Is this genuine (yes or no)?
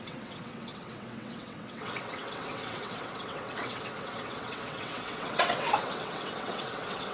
no